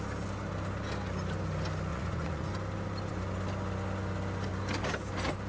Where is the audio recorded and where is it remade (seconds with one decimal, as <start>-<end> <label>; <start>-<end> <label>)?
0.0-1.9 recorded; 1.9-2.5 remade; 2.5-5.5 recorded